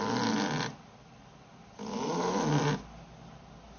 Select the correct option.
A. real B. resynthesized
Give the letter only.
A